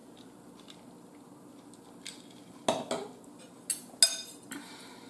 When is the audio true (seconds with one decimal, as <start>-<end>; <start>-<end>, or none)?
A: 0.0-5.1